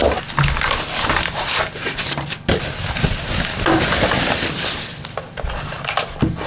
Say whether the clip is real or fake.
real